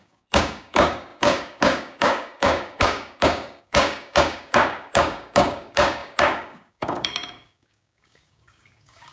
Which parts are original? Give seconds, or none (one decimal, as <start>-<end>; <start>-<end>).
none

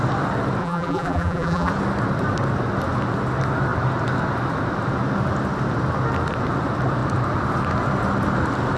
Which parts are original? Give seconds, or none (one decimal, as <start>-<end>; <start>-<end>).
0.0-0.6; 1.7-8.8

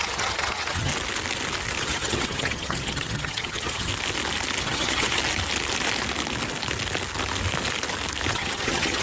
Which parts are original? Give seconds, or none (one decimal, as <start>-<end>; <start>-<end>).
0.9-1.8; 3.9-4.6; 5.2-8.3